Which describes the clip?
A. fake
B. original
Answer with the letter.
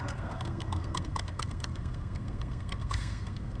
A